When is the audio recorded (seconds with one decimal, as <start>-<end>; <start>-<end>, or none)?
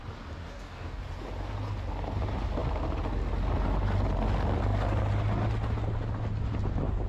0.0-0.4; 1.0-7.1